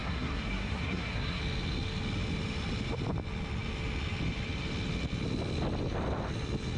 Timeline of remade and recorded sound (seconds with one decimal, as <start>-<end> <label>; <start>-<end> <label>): 0.0-1.4 remade; 1.4-6.8 recorded